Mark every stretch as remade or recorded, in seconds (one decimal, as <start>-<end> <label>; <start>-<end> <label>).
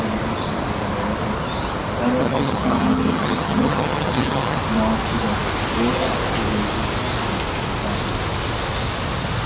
0.0-2.2 recorded; 2.2-4.6 remade; 4.6-9.5 recorded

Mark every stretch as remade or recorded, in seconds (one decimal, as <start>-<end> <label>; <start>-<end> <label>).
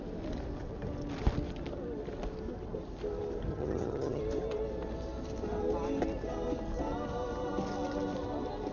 0.0-3.5 recorded; 3.5-4.2 remade; 4.2-8.7 recorded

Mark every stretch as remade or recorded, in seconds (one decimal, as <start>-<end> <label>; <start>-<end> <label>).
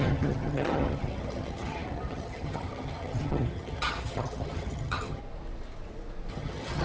0.0-5.2 remade; 5.2-6.3 recorded; 6.3-6.8 remade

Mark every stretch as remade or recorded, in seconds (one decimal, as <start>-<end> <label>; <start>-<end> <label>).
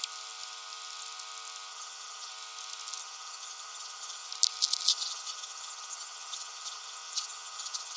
0.0-1.7 recorded; 1.7-2.3 remade; 2.3-3.0 recorded; 3.0-4.3 remade; 4.3-4.9 recorded; 4.9-8.0 remade